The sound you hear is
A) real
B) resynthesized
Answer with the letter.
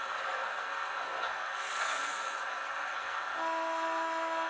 B